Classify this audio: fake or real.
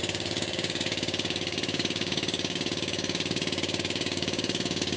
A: fake